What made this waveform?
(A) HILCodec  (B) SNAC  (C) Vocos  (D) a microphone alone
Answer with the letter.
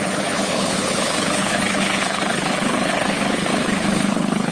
A